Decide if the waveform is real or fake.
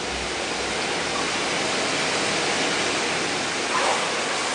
real